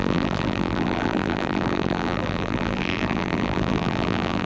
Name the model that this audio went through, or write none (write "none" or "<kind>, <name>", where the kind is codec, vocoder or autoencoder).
vocoder, BigVGAN v2